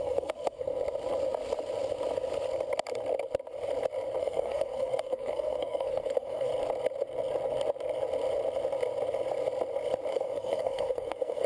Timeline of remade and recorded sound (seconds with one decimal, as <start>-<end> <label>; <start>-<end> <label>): 0.0-0.7 remade; 0.7-4.2 recorded; 4.2-6.5 remade; 6.5-10.1 recorded; 10.1-11.5 remade